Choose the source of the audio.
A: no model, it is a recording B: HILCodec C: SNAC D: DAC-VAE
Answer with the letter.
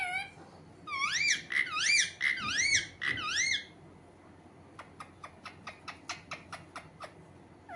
A